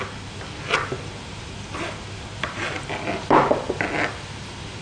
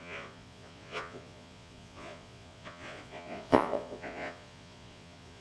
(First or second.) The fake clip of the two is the second